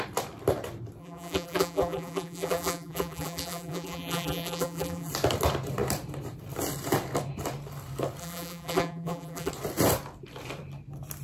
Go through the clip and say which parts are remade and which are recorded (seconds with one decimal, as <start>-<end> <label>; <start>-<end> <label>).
0.0-1.0 recorded; 1.0-5.1 remade; 5.1-8.2 recorded; 8.2-9.5 remade; 9.5-11.2 recorded